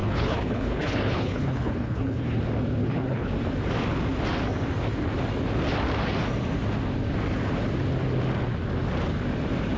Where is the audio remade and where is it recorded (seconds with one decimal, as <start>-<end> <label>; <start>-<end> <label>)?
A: 0.0-2.4 remade; 2.4-2.8 recorded; 2.8-3.3 remade; 3.3-9.8 recorded